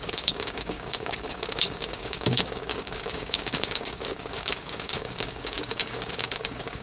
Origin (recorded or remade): remade